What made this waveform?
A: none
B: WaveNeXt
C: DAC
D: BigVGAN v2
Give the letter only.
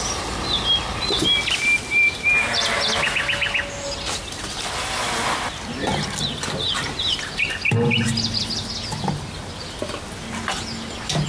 A